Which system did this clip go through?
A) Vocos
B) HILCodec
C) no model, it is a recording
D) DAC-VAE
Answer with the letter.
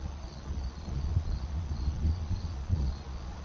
A